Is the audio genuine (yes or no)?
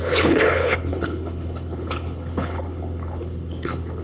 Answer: no